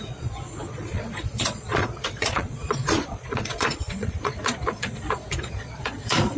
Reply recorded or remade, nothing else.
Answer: remade